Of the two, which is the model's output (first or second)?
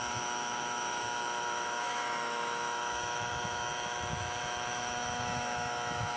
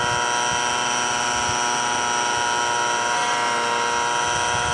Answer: first